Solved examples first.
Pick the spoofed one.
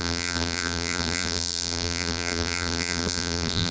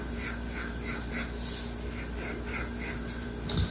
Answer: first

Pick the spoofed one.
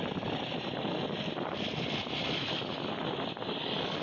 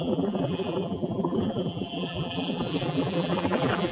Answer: second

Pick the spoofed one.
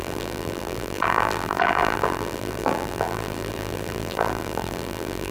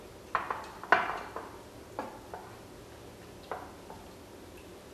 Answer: first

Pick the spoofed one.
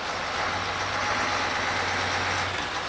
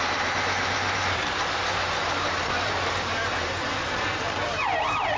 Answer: second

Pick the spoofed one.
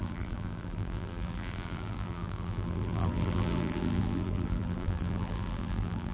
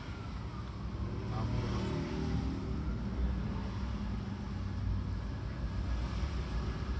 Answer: first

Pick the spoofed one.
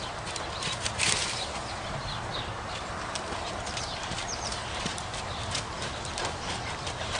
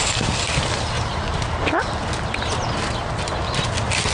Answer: first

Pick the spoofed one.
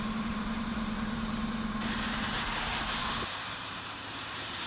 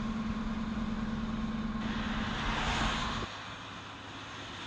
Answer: first